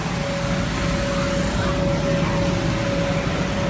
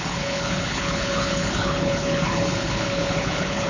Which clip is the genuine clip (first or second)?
first